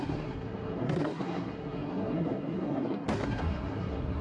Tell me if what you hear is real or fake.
fake